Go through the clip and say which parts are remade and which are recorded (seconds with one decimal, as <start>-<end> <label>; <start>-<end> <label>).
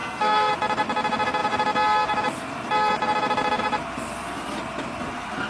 0.0-0.5 remade; 0.5-5.5 recorded